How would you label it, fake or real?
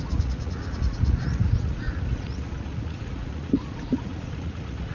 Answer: fake